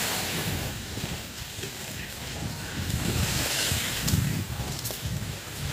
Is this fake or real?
fake